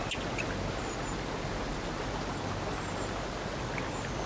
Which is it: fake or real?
real